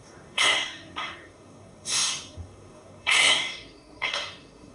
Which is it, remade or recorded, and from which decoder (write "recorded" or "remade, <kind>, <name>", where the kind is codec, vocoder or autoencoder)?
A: remade, codec, SNAC